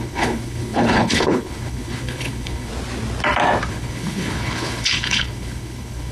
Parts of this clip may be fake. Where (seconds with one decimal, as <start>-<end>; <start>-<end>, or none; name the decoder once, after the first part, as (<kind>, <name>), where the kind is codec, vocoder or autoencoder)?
0.0-2.7 (codec, HILCodec); 3.7-6.1

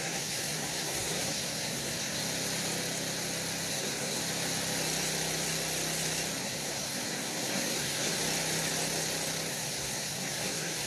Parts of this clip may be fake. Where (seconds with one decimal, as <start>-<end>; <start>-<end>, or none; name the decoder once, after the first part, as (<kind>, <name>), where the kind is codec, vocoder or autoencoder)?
0.0-2.2 (codec, SNAC); 3.7-4.2; 6.4-8.2; 9.5-10.9

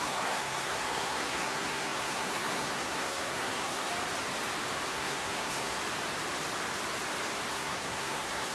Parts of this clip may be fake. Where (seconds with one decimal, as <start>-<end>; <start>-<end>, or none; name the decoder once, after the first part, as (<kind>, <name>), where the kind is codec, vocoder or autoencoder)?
0.0-3.9 (codec, SNAC); 4.9-5.8; 7.5-8.5

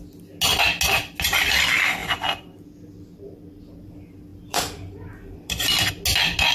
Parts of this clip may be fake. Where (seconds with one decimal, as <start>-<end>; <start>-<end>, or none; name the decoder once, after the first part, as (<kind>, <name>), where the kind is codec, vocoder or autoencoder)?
2.0-3.9 (vocoder, BigVGAN v2); 4.3-5.9

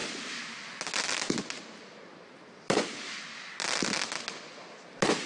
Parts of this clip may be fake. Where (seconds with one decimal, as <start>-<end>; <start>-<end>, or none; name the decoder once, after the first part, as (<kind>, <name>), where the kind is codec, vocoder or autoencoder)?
none

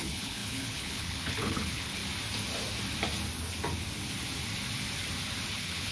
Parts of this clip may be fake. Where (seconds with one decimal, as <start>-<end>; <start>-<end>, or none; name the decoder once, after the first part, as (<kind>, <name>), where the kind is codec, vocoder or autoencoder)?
0.0-2.0 (codec, HILCodec); 5.5-5.9

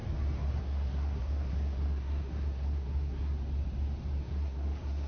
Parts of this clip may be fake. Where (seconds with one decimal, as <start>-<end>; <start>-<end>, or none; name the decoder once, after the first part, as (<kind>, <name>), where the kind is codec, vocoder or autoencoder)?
0.6-3.3 (codec, SNAC); 4.2-5.1

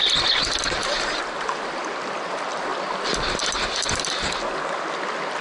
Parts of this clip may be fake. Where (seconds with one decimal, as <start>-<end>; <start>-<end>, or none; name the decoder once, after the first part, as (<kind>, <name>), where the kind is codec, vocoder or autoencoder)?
none